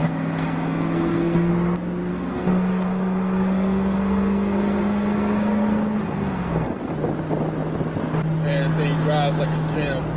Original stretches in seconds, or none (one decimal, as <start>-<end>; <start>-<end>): 1.5-2.1; 6.9-10.2

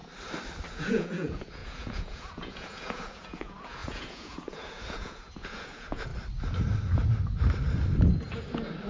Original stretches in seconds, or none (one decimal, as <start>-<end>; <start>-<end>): 0.0-0.7; 6.1-8.9

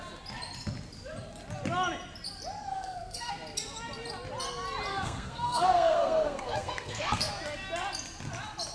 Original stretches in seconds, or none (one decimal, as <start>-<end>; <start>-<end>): 0.0-2.7; 3.3-4.9; 7.3-8.7

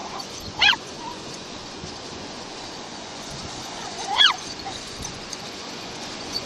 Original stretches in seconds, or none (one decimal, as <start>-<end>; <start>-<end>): none

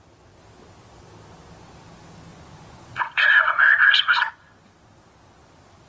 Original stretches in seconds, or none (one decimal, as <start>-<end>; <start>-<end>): 0.0-2.3; 4.5-5.9

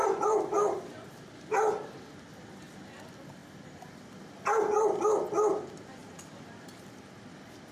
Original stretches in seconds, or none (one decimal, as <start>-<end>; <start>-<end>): 1.1-3.4; 4.1-6.0; 7.3-7.7

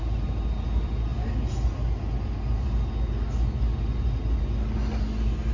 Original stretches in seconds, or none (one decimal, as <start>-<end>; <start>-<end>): 0.0-5.5

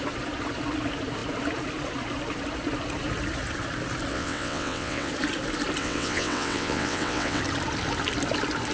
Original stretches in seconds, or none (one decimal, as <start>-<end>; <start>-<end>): 0.0-4.1; 5.1-5.8; 7.4-8.7